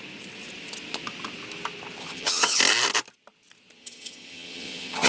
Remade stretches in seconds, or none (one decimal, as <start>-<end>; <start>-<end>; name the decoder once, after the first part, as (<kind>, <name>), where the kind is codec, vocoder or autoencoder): 2.0-2.6 (vocoder, HiFi-GAN); 3.8-5.1